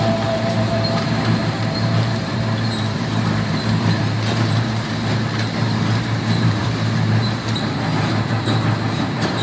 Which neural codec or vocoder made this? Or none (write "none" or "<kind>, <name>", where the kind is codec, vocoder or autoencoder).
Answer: vocoder, BigVGAN v2